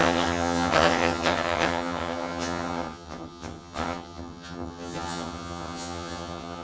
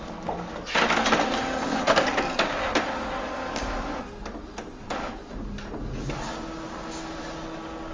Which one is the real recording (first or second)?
second